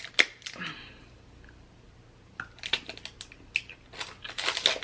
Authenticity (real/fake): real